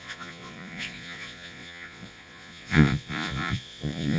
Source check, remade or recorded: remade